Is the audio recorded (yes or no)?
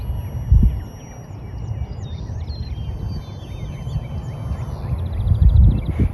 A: yes